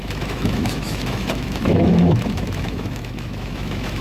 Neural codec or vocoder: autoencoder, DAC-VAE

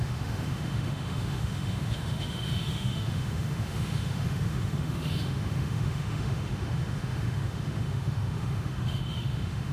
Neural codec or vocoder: autoencoder, DAC-VAE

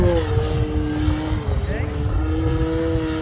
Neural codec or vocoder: none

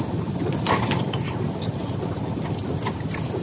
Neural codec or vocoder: none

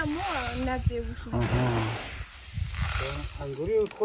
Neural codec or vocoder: none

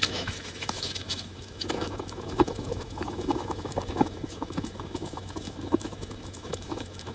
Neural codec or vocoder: autoencoder, DAC-VAE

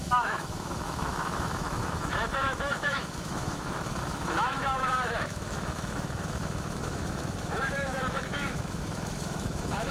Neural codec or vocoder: autoencoder, DAC-VAE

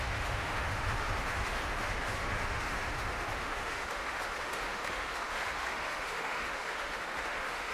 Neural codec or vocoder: autoencoder, DAC-VAE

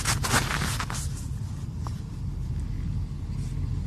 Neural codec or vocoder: none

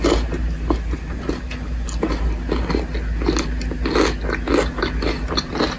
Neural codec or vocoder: none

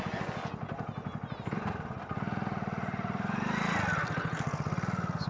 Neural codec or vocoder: none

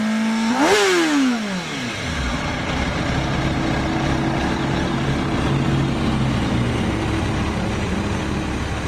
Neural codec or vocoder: none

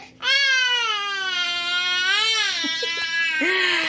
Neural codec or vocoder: none